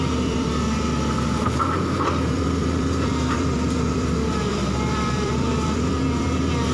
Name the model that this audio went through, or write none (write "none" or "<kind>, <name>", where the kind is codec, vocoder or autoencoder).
vocoder, BigVGAN v2